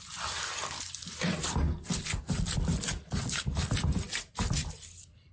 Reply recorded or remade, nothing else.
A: remade